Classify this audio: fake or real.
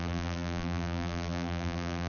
fake